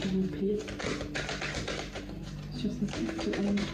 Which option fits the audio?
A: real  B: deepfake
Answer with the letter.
A